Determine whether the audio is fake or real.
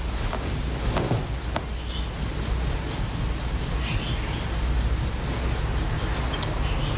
real